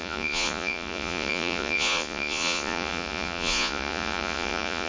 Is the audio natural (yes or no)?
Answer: no